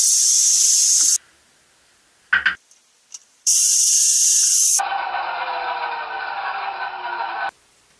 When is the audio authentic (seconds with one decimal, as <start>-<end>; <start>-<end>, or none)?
0.0-3.2; 4.0-8.0